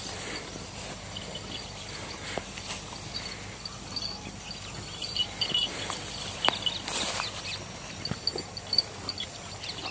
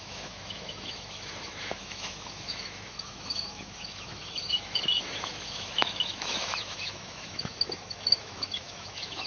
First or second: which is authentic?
first